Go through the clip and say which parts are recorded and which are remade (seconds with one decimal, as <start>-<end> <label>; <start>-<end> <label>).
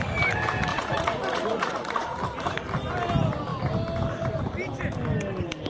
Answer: 0.0-0.7 recorded; 0.7-2.2 remade; 2.2-5.7 recorded